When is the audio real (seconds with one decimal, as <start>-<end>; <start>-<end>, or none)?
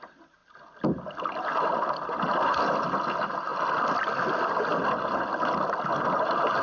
0.0-6.6